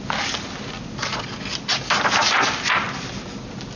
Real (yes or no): yes